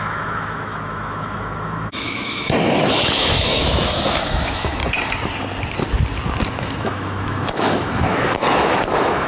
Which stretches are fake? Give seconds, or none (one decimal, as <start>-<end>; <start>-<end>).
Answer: 0.0-4.8; 6.5-9.3

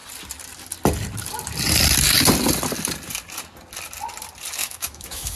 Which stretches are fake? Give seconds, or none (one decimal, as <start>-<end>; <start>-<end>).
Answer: 4.6-5.4

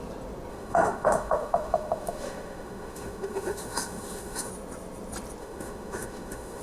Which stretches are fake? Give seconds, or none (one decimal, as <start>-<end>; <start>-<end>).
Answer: 0.5-4.5; 5.4-6.6

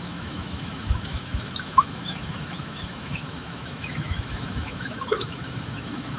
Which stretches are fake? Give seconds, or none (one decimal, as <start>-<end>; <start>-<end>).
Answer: 0.0-6.2

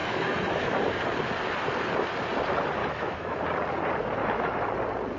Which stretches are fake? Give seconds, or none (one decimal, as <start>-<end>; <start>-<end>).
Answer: 0.0-0.8; 2.8-3.4; 4.2-4.7

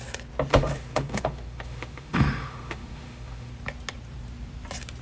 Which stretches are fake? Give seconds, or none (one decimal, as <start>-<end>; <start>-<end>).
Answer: 0.5-3.5